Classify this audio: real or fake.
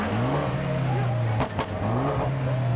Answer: real